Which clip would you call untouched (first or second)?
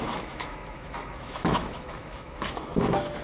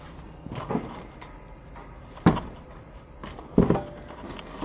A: second